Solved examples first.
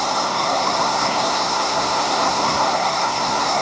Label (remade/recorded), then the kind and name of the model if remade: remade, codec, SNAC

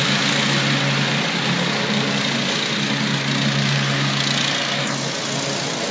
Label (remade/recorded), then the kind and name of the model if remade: recorded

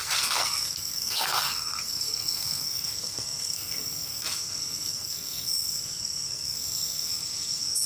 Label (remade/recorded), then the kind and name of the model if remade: remade, codec, SNAC